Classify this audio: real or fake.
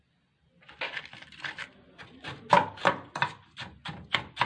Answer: real